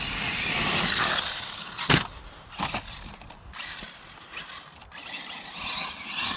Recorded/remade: recorded